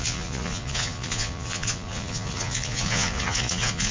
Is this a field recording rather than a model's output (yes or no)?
no